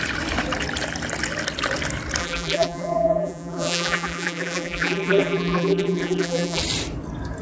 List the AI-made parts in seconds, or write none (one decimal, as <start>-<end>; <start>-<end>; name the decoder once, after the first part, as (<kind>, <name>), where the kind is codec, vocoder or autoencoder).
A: 2.2-6.6 (vocoder, BigVGAN v2)